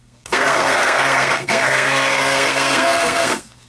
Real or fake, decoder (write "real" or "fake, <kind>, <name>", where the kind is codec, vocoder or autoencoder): fake, codec, SNAC